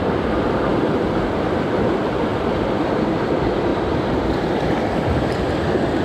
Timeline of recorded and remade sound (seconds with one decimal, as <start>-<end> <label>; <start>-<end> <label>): 0.0-2.3 recorded; 2.3-3.3 remade; 3.3-3.7 recorded; 3.7-5.6 remade; 5.6-6.0 recorded